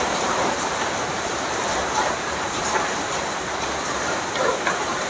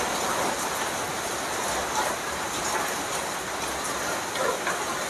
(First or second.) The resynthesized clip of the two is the first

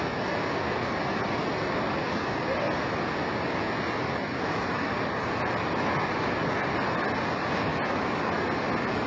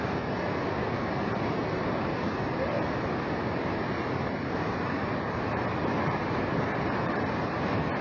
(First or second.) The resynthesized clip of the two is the second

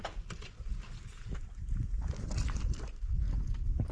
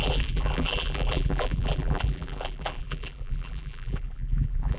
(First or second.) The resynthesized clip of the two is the second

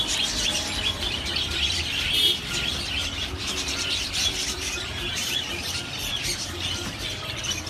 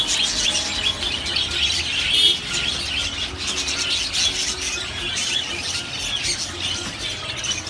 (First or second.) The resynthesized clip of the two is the first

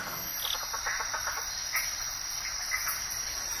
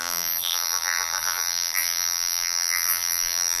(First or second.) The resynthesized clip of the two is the second